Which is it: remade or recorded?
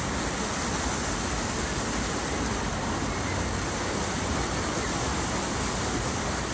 recorded